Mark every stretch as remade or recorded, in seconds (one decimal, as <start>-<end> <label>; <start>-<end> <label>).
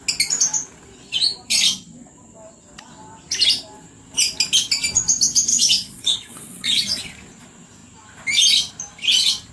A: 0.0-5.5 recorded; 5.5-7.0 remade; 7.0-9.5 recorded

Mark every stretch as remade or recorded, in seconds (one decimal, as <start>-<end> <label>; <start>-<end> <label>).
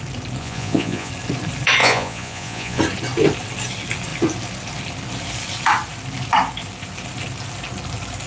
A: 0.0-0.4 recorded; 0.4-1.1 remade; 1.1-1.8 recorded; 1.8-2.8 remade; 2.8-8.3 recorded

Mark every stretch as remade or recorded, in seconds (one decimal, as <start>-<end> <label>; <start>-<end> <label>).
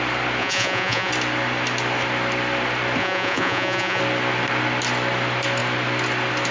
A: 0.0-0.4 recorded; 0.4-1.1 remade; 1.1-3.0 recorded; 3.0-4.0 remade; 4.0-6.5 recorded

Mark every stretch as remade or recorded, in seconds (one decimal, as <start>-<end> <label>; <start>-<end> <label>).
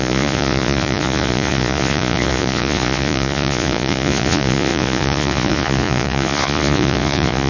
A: 0.0-7.5 remade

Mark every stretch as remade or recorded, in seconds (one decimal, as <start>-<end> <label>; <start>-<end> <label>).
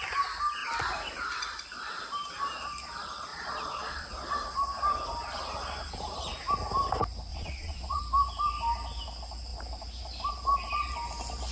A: 0.0-3.3 recorded; 3.3-4.1 remade; 4.1-7.3 recorded; 7.3-8.0 remade; 8.0-11.5 recorded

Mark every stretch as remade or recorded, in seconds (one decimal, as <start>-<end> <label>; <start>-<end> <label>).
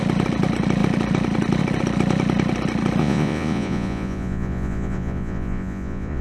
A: 0.0-3.0 recorded; 3.0-6.2 remade